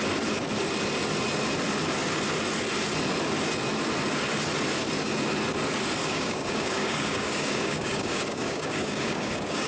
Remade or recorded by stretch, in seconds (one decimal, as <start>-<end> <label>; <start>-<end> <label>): 0.0-6.0 recorded; 6.0-9.7 remade